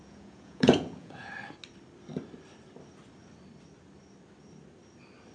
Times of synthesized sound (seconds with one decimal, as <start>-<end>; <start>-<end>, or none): 0.0-1.3